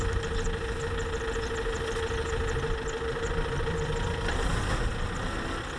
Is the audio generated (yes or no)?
no